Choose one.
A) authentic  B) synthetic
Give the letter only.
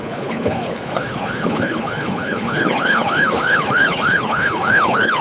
B